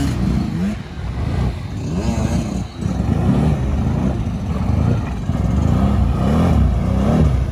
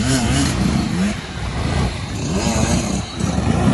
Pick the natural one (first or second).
first